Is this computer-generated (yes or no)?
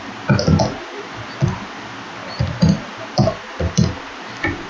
no